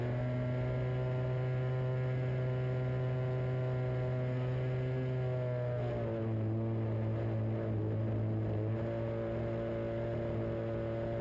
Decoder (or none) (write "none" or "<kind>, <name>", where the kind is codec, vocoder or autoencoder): none